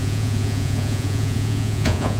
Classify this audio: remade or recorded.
remade